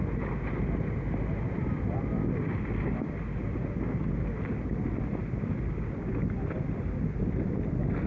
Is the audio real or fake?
real